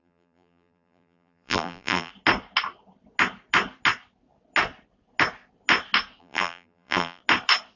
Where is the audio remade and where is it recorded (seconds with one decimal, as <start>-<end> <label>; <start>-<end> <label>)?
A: 0.0-2.1 remade; 2.1-6.2 recorded; 6.2-7.2 remade; 7.2-7.8 recorded